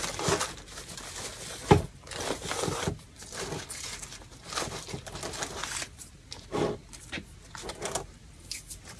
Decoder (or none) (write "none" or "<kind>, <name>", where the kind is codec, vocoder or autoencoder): none